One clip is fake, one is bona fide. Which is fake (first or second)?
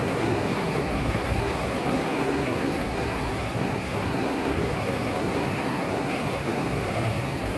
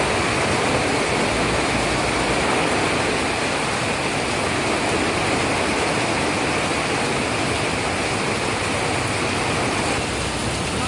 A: first